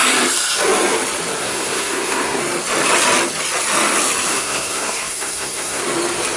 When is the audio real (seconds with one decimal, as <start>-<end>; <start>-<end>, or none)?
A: 0.0-1.4; 2.4-4.3; 5.8-6.4